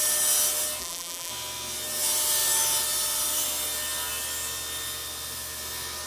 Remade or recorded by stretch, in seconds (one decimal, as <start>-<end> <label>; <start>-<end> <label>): 0.0-0.8 recorded; 0.8-1.3 remade; 1.3-6.1 recorded